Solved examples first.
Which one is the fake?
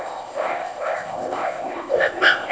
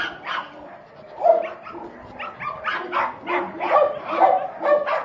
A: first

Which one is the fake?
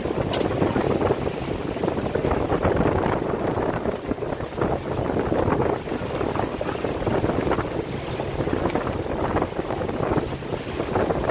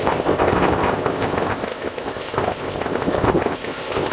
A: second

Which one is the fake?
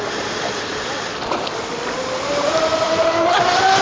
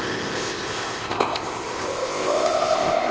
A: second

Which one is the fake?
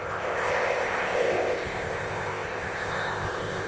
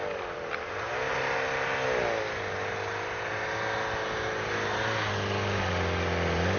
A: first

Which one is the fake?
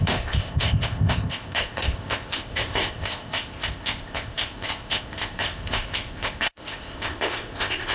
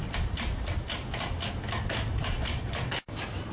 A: first